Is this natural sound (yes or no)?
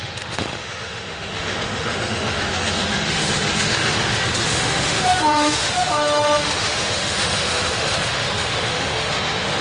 no